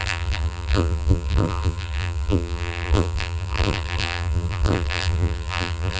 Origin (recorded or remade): remade